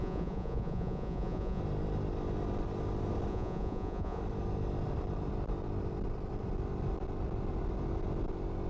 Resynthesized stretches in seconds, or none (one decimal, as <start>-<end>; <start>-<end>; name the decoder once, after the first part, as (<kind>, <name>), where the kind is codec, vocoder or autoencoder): 0.0-1.6 (vocoder, Vocos); 3.3-4.2